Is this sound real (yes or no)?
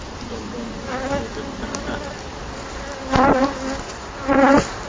yes